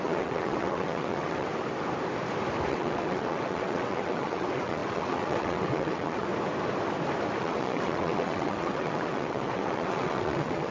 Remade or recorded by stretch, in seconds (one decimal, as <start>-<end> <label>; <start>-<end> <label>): 0.0-1.5 remade; 1.5-2.7 recorded; 2.7-6.3 remade; 6.3-7.4 recorded; 7.4-10.7 remade